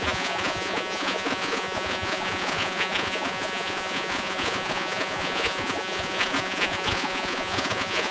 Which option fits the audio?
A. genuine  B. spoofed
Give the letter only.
B